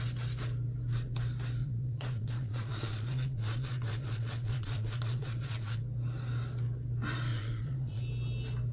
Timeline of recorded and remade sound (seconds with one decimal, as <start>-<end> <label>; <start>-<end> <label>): 0.0-1.6 recorded; 1.6-5.8 remade; 5.8-7.3 recorded; 7.3-8.0 remade; 8.0-8.7 recorded